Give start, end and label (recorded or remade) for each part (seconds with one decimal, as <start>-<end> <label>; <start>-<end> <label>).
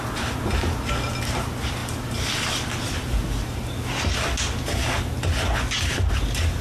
0.0-6.6 recorded